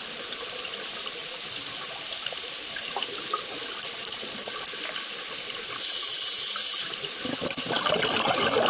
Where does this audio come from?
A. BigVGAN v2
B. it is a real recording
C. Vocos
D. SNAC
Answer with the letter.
B